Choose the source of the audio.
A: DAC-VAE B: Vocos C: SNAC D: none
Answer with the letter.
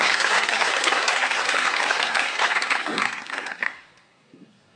C